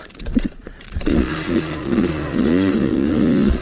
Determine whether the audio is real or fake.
fake